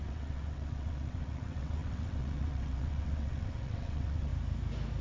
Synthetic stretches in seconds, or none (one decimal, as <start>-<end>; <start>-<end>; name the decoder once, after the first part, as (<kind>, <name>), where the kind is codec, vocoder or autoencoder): 0.0-4.3 (vocoder, WaveNeXt)